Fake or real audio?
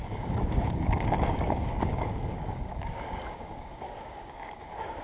fake